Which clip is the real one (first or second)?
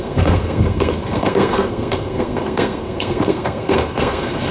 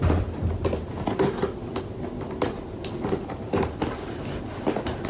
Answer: second